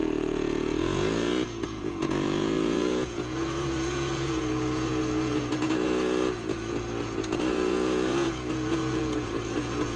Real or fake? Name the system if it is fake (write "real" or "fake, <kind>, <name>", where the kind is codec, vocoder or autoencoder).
fake, vocoder, Vocos